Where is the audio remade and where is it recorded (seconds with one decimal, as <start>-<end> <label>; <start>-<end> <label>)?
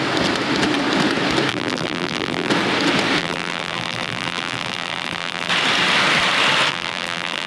0.0-1.5 recorded; 1.5-2.5 remade; 2.5-3.2 recorded; 3.2-5.5 remade; 5.5-6.7 recorded; 6.7-7.5 remade